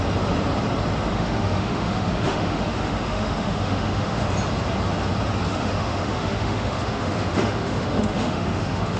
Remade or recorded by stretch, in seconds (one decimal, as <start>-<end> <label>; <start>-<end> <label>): 0.0-1.1 recorded; 1.1-4.3 remade; 4.3-5.5 recorded; 5.5-9.0 remade